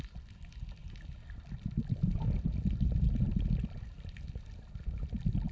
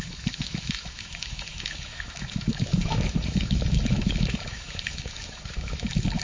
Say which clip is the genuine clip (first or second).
first